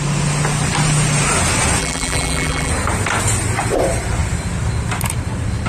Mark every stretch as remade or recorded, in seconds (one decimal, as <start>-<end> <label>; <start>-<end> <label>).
0.0-1.8 recorded; 1.8-2.7 remade; 2.7-5.7 recorded